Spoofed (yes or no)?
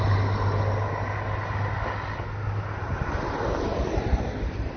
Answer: no